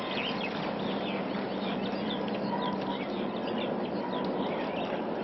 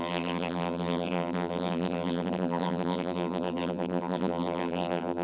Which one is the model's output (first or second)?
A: second